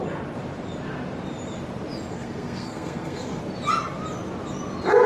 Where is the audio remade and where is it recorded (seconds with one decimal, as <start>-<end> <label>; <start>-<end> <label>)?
0.0-2.1 recorded; 2.1-3.4 remade; 3.4-5.1 recorded

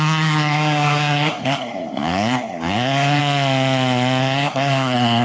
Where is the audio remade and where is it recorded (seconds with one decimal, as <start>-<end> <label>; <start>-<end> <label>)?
0.0-3.2 remade; 3.2-4.2 recorded; 4.2-5.2 remade